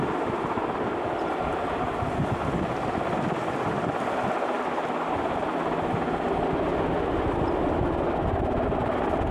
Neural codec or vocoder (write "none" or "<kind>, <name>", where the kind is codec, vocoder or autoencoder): none